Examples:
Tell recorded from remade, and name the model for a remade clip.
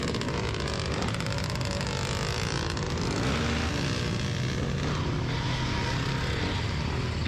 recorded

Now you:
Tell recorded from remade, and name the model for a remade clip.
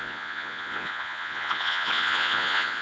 remade, vocoder, Vocos